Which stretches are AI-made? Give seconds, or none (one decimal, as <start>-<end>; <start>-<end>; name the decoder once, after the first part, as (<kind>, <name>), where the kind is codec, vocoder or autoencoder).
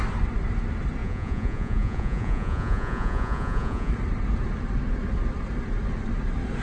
1.0-3.9 (vocoder, Vocos)